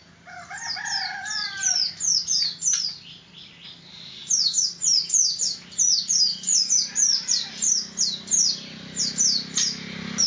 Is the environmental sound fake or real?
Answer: real